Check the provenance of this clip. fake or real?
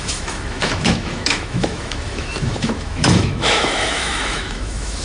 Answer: fake